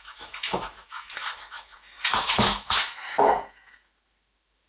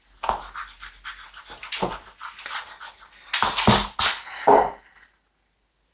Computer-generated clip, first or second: first